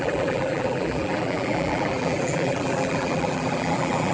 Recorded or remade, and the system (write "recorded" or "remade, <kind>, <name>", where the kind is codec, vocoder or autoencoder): remade, vocoder, BigVGAN v2